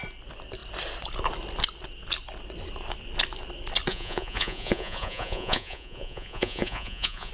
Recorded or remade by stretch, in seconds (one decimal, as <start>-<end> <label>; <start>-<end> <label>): 0.0-3.9 recorded; 3.9-7.3 remade